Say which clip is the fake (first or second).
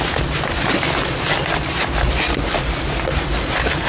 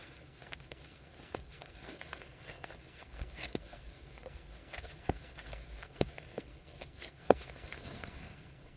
second